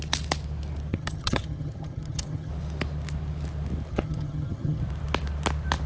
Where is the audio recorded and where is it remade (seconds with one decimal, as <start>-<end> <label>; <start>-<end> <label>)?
0.0-0.9 recorded; 0.9-2.5 remade; 2.5-3.9 recorded; 3.9-4.8 remade; 4.8-5.9 recorded